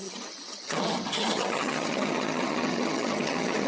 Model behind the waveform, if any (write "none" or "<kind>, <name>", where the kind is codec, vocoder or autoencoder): vocoder, HiFi-GAN